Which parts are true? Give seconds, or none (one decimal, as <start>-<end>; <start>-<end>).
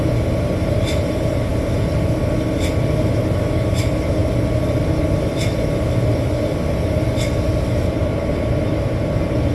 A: 0.0-9.5